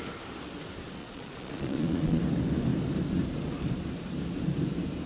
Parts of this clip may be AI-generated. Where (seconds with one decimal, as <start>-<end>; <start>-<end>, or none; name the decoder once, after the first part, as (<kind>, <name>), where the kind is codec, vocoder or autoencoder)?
1.0-2.2 (vocoder, Vocos)